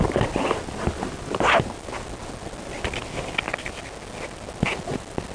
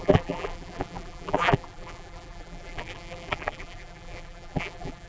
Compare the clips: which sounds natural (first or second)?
first